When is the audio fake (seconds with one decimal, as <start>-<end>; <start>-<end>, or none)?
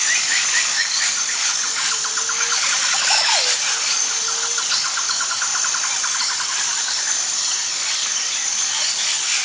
0.0-5.5; 6.2-9.4